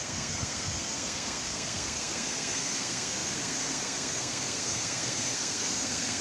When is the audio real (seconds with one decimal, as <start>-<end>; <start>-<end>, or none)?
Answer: none